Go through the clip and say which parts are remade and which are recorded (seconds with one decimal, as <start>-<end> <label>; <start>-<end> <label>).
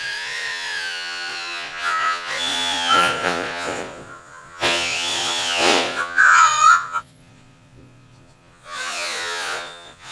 0.0-10.1 remade